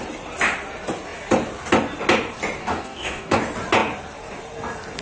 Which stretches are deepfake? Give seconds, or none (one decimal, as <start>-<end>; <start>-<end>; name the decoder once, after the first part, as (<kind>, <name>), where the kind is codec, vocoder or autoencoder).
2.6-3.4 (codec, DAC)